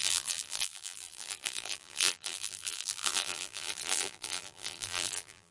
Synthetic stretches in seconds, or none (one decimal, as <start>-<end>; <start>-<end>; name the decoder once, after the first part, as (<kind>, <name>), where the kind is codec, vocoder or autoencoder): 0.0-5.5 (vocoder, BigVGAN v2)